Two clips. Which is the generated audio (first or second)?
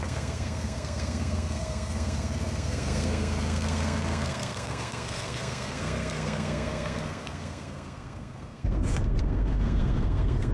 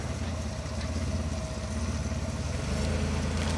first